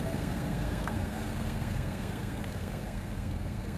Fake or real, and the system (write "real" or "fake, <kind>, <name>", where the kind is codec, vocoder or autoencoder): fake, codec, SNAC